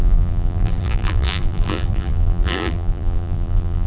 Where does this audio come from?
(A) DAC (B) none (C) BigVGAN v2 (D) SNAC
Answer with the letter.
C